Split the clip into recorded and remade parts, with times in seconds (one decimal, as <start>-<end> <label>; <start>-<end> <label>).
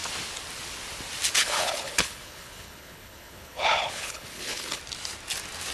0.0-1.4 recorded; 1.4-4.8 remade; 4.8-5.7 recorded